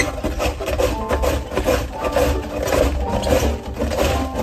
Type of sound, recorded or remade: recorded